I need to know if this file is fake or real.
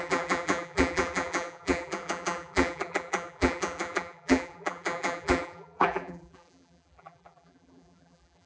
fake